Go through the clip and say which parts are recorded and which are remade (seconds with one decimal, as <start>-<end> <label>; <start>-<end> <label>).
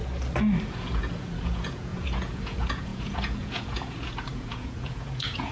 0.0-0.7 recorded; 0.7-5.5 remade